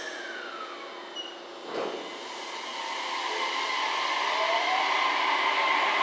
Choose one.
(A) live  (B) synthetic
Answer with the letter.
A